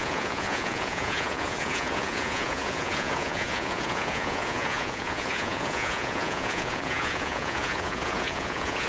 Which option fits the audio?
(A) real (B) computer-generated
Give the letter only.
B